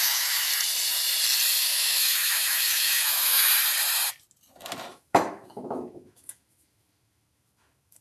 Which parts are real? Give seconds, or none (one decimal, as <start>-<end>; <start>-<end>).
0.5-1.6; 3.5-4.9